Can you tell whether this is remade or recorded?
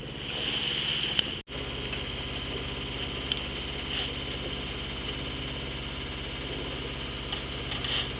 recorded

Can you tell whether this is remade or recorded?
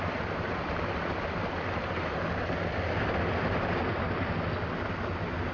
recorded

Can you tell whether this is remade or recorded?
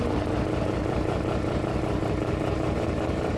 remade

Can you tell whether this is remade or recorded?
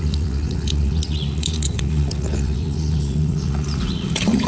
remade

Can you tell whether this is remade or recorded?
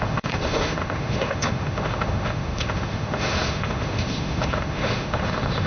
remade